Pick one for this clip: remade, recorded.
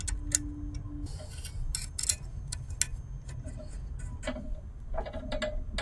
recorded